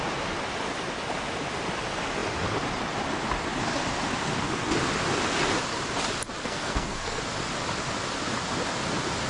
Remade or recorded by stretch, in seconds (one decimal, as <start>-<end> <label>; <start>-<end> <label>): 0.0-6.4 recorded; 6.4-7.2 remade; 7.2-9.3 recorded